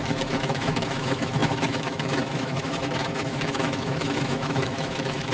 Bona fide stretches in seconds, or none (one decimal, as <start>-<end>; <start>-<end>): none